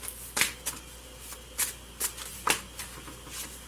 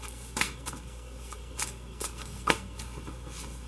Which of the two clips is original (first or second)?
first